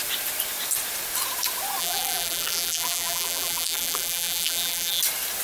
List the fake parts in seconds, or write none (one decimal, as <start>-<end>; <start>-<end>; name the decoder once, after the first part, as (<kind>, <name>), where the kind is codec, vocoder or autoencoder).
1.8-5.0 (vocoder, BigVGAN v2)

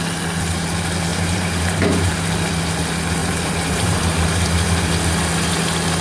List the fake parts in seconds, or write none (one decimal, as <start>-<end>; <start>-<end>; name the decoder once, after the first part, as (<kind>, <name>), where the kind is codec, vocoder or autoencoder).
1.1-2.1 (vocoder, BigVGAN v2); 3.2-4.9

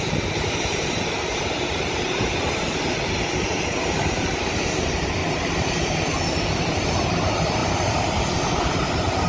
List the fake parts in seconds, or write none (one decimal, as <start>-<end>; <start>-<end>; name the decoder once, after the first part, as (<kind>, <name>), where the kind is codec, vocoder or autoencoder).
0.0-5.2 (vocoder, BigVGAN v2); 5.7-7.6; 8.2-9.3

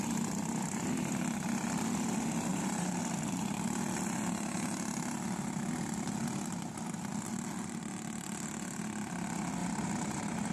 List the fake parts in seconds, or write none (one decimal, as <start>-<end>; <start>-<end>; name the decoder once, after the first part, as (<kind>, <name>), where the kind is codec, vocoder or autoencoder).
2.5-3.0 (vocoder, BigVGAN v2); 9.6-10.5

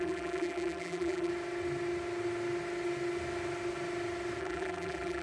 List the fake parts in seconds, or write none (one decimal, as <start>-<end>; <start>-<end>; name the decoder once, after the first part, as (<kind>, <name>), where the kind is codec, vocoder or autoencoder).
0.0-1.3 (vocoder, BigVGAN v2); 4.4-5.2

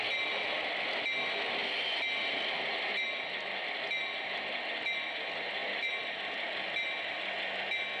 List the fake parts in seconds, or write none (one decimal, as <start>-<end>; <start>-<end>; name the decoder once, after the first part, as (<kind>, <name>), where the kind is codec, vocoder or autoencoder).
none

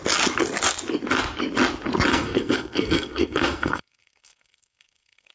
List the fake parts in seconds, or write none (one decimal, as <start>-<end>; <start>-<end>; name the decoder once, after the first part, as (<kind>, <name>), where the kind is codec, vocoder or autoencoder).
2.1-5.3 (codec, SNAC)